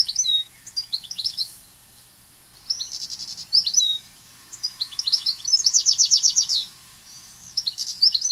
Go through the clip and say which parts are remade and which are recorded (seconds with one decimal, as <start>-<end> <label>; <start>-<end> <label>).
0.0-2.5 remade; 2.5-3.8 recorded; 3.8-8.3 remade